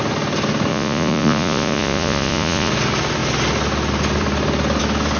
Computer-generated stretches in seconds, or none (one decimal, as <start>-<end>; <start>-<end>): 0.7-2.7

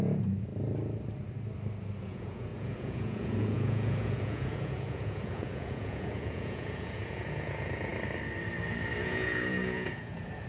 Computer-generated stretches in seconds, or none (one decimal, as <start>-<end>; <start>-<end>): 0.0-0.5; 2.0-7.9; 9.0-10.5